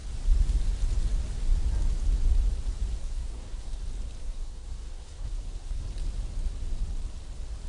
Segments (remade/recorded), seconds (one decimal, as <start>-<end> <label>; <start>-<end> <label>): 0.0-3.0 recorded; 3.0-3.8 remade; 3.8-4.2 recorded; 4.2-5.8 remade; 5.8-7.7 recorded